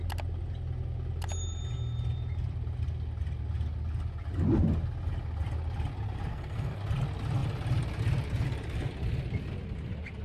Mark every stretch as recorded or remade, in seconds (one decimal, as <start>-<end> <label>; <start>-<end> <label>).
0.0-6.3 recorded; 6.3-6.8 remade; 6.8-10.2 recorded